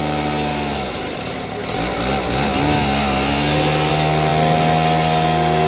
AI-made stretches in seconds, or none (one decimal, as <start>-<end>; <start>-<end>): 0.5-1.0